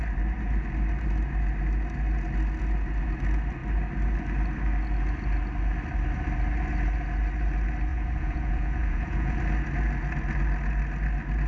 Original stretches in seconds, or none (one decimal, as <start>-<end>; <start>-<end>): 0.0-7.9; 9.4-11.5